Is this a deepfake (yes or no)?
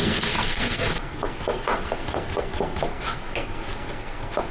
yes